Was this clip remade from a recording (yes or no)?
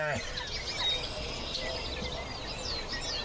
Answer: no